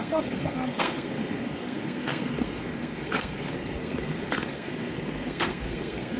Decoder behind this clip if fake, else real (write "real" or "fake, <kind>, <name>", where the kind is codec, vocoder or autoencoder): fake, codec, SNAC